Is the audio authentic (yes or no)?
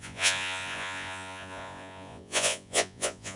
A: no